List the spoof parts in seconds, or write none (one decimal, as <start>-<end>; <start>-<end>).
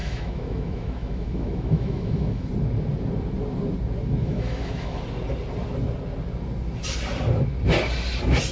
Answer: 0.0-2.5; 4.2-5.0